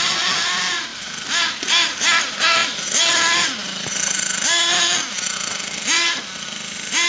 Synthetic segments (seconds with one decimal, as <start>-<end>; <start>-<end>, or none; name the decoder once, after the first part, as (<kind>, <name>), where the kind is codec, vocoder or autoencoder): none